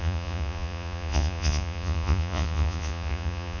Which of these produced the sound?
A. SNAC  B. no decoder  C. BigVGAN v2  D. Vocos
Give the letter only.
D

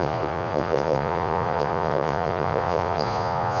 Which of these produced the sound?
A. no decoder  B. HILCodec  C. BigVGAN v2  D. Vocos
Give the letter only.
D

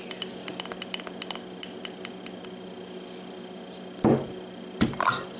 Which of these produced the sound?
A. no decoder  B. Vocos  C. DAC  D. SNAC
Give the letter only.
A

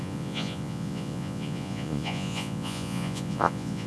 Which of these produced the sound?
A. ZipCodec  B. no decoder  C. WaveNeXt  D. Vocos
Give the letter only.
D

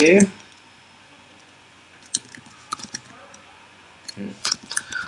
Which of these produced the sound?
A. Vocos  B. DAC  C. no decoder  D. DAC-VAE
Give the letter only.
A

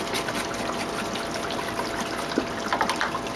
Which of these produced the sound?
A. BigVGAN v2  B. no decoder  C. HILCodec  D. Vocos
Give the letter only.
B